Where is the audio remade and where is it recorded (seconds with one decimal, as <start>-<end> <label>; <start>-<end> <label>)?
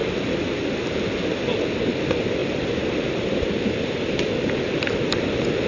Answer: 0.0-0.7 remade; 0.7-2.4 recorded; 2.4-5.0 remade; 5.0-5.7 recorded